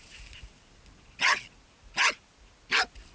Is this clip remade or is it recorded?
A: recorded